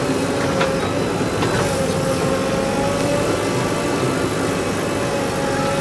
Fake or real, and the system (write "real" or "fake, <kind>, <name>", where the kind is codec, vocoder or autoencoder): real